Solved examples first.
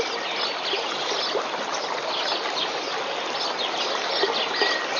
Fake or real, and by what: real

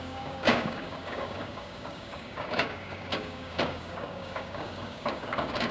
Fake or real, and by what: fake, codec, DAC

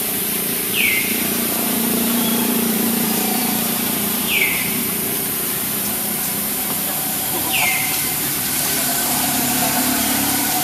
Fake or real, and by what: fake, vocoder, BigVGAN v2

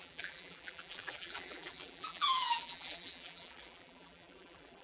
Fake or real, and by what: fake, vocoder, BigVGAN v2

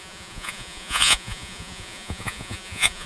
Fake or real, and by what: fake, vocoder, Vocos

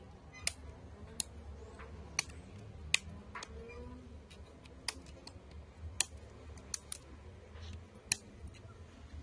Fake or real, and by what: real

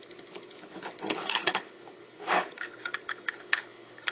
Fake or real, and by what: fake, codec, HILCodec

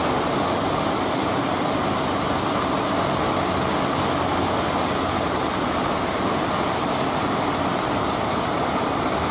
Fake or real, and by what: real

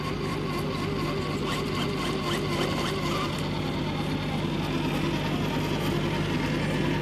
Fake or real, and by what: real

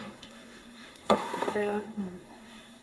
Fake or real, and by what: fake, codec, SNAC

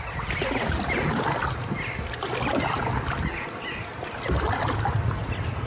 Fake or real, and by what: real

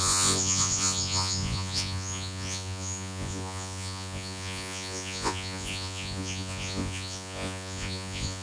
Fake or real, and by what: fake, vocoder, Vocos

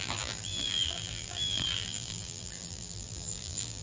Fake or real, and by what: fake, vocoder, BigVGAN v2